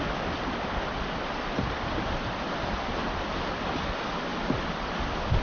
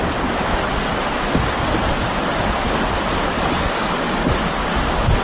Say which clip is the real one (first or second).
second